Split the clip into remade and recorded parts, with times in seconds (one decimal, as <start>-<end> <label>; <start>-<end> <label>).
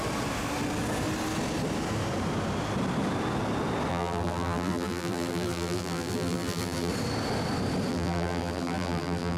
0.0-3.9 recorded; 3.9-6.9 remade; 6.9-7.9 recorded; 7.9-9.4 remade